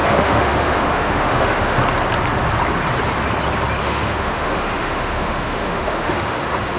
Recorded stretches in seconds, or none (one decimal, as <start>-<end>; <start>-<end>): 1.8-3.8